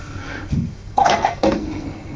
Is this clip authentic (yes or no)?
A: no